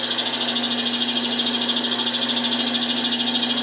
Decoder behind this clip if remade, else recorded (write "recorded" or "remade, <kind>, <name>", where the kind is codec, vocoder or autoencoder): recorded